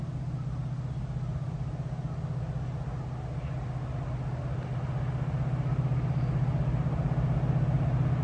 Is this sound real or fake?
real